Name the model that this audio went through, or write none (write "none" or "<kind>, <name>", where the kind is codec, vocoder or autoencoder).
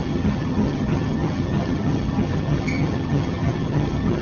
vocoder, HiFi-GAN